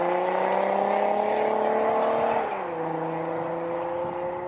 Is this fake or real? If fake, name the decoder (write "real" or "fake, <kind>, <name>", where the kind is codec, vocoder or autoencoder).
real